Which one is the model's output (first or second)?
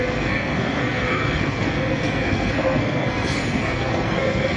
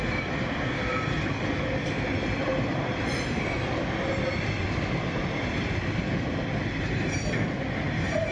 first